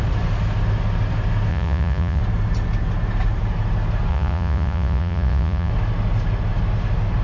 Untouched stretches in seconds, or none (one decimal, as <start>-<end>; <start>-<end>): 0.0-1.5; 2.2-4.1; 5.7-7.2